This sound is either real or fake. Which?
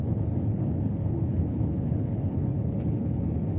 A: fake